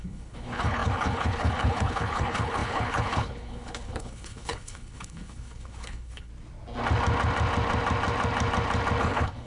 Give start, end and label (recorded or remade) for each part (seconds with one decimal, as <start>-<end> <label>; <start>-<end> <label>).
0.0-6.3 remade; 6.3-9.0 recorded; 9.0-9.5 remade